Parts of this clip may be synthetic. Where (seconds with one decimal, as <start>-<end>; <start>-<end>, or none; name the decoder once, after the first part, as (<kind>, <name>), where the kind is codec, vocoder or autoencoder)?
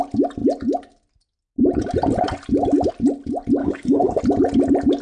3.6-4.2 (codec, HILCodec)